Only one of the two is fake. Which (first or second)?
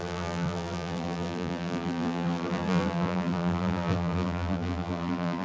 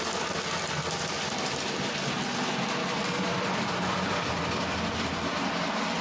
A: first